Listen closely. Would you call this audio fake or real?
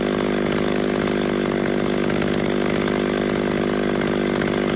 real